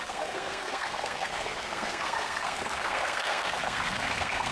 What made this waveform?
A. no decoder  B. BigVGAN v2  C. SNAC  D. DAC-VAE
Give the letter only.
C